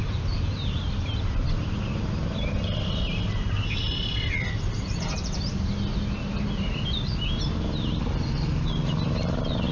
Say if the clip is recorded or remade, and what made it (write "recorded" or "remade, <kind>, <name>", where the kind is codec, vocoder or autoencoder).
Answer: recorded